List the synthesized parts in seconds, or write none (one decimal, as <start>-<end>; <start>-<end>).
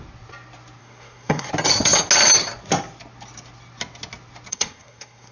0.8-1.5; 4.5-5.3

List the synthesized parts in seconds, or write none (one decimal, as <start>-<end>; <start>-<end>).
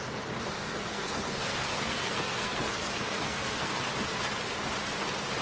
0.6-3.8